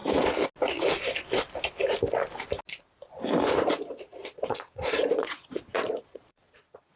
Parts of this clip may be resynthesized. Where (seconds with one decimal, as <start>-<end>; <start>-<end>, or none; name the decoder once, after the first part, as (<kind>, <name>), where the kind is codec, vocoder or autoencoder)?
3.6-7.0 (vocoder, Vocos)